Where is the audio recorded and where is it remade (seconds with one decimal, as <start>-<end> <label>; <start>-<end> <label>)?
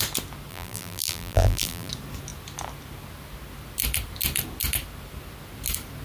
0.0-0.5 recorded; 0.5-1.9 remade; 1.9-6.0 recorded